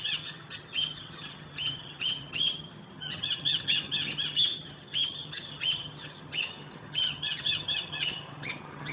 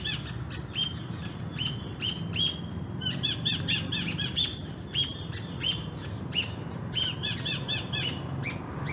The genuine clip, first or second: second